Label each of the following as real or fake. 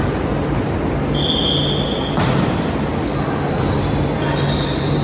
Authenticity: real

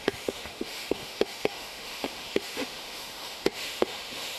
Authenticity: fake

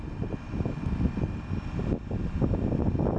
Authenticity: real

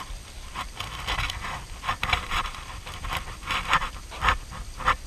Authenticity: fake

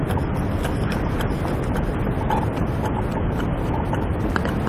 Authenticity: real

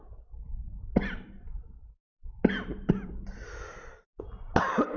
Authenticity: real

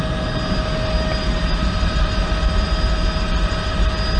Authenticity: real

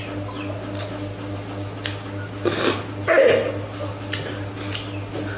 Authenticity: real